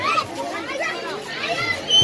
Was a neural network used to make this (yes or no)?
no